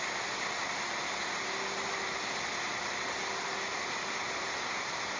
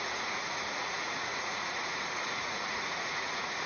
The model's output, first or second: second